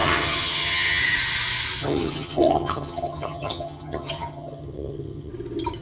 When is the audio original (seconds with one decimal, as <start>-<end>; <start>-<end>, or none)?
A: 1.0-1.8; 5.3-5.8